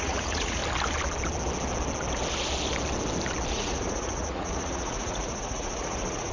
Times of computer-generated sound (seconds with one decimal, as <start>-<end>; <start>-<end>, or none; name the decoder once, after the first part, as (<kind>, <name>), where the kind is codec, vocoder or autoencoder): 0.0-0.6 (vocoder, Vocos); 3.5-6.3